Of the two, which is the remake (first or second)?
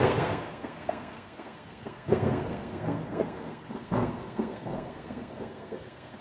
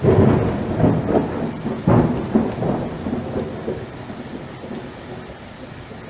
first